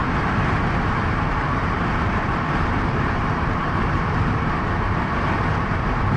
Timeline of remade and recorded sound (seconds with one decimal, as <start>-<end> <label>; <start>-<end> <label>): 0.0-1.1 recorded; 1.1-6.2 remade